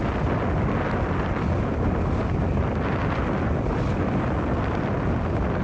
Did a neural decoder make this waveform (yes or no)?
no